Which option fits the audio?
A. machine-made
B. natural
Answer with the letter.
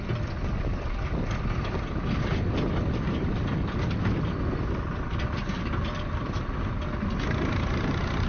B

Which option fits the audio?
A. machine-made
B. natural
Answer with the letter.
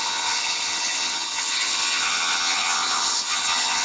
A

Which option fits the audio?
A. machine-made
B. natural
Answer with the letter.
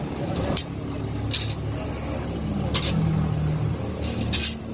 B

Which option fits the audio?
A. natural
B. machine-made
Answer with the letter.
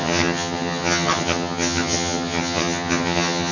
B